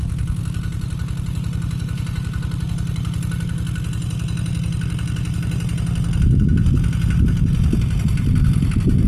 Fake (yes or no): no